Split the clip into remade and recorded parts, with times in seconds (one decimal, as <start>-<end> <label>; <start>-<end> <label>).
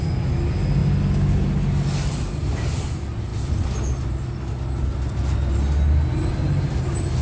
0.0-7.2 recorded